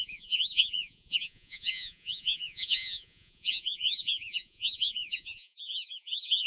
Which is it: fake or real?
fake